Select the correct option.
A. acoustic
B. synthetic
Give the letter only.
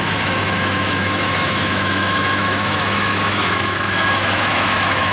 B